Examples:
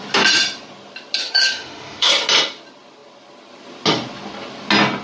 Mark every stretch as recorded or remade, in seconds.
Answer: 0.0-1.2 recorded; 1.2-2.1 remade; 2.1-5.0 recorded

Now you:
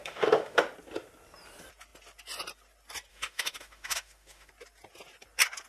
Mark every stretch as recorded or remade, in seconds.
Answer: 0.0-0.6 remade; 0.6-3.1 recorded; 3.1-4.5 remade; 4.5-5.7 recorded

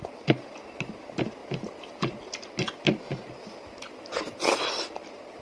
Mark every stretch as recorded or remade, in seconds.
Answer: 0.0-5.4 recorded

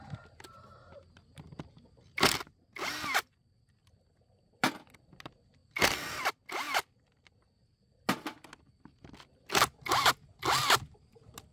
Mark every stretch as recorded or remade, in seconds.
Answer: 0.0-11.5 recorded

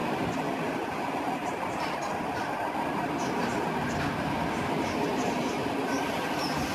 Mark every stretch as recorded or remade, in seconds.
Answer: 0.0-1.5 recorded; 1.5-3.5 remade; 3.5-5.6 recorded; 5.6-6.7 remade

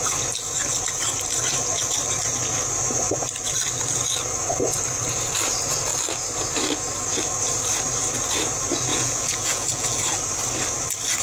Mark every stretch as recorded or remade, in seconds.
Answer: 0.0-8.9 recorded; 8.9-10.0 remade; 10.0-11.2 recorded